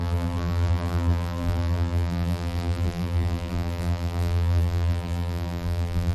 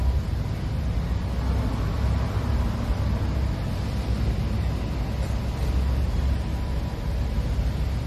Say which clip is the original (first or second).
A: second